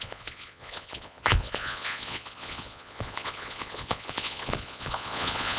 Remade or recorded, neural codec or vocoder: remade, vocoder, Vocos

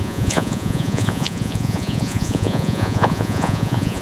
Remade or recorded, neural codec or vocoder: remade, vocoder, Vocos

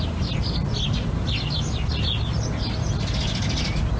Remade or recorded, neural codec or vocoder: recorded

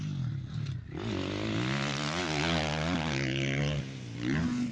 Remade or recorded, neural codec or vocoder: recorded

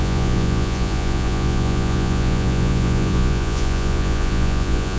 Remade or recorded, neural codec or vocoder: remade, vocoder, Vocos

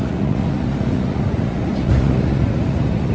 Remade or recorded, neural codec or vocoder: remade, vocoder, Vocos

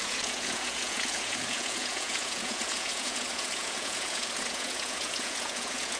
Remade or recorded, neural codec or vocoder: remade, vocoder, Vocos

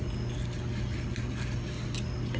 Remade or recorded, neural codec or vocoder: recorded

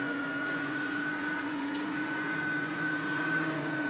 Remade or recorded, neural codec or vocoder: remade, vocoder, Vocos